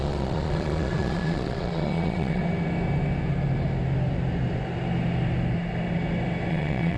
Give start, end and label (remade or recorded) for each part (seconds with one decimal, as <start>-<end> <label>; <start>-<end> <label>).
0.0-2.4 remade; 2.4-6.5 recorded; 6.5-7.0 remade